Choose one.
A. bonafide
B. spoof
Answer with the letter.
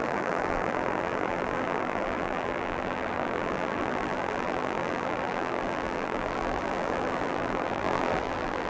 B